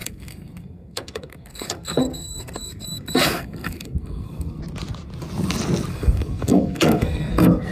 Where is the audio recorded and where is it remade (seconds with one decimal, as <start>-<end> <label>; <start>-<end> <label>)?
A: 0.0-4.6 remade; 4.6-5.9 recorded; 5.9-7.7 remade